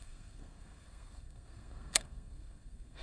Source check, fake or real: fake